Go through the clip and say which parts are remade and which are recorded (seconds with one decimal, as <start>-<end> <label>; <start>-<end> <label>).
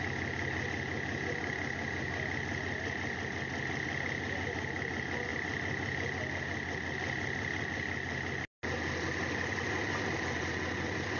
0.0-11.2 recorded